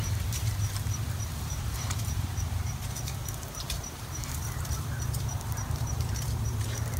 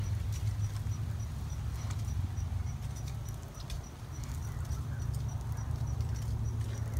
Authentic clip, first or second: second